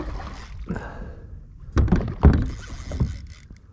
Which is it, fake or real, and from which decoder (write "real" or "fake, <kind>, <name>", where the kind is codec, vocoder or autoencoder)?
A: real